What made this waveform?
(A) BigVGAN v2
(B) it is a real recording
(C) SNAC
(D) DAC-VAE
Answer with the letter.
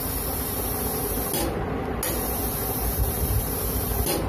B